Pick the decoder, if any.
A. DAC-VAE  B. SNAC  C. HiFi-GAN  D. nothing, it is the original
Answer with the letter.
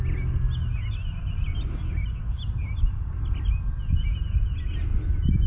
D